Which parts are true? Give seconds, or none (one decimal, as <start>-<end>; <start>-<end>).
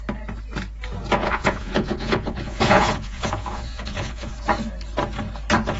0.0-1.2; 4.3-5.8